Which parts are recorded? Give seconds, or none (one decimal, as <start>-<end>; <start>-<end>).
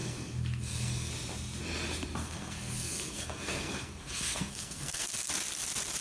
1.1-2.2; 5.3-6.0